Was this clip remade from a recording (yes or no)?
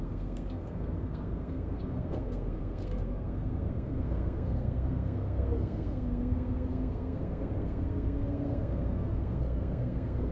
yes